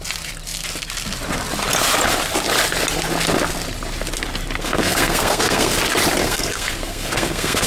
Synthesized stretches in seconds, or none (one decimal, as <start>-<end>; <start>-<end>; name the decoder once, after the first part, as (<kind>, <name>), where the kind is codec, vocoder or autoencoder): 4.6-5.8 (codec, SNAC); 6.2-7.7